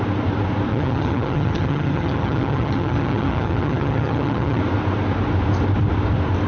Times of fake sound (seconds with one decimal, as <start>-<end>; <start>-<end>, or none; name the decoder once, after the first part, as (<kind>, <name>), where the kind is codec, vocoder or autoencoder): 0.7-4.6 (vocoder, HiFi-GAN)